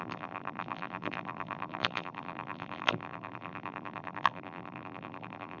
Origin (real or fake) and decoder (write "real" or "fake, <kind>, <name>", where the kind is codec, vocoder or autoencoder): fake, vocoder, BigVGAN v2